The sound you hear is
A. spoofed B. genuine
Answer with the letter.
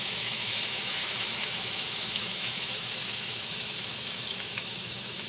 A